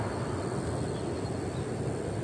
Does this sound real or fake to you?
real